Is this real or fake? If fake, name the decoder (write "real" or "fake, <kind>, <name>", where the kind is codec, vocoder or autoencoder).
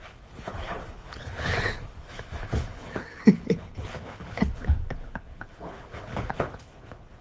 fake, codec, HILCodec